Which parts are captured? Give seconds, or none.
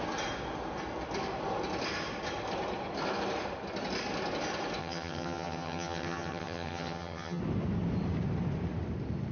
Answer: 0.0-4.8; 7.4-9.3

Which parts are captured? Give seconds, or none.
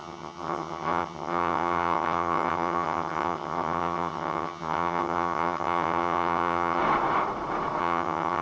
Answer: 6.8-7.8